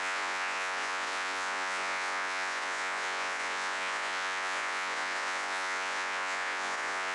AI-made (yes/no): yes